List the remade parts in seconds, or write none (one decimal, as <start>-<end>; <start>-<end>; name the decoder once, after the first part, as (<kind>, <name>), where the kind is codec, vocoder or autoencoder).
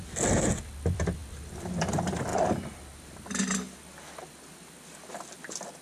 none